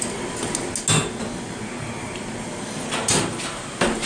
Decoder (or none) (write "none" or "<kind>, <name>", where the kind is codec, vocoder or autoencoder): none